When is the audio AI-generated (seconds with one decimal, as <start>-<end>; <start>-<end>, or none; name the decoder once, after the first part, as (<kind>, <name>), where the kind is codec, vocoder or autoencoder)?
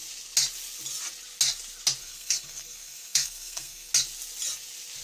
2.0-3.9 (codec, SNAC)